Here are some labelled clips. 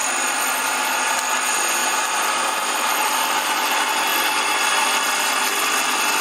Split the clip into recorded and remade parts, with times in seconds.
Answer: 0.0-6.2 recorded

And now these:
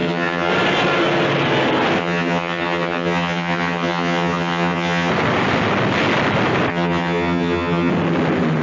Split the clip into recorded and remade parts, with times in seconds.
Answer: 0.0-0.5 remade; 0.5-2.0 recorded; 2.0-5.1 remade; 5.1-6.7 recorded; 6.7-7.9 remade; 7.9-8.6 recorded

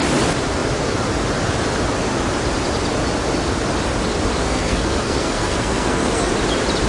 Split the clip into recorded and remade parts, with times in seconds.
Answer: 0.0-4.4 recorded; 4.4-6.3 remade; 6.3-6.9 recorded